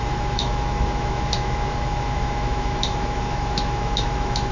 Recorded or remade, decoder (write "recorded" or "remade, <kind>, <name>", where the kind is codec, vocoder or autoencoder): remade, autoencoder, DAC-VAE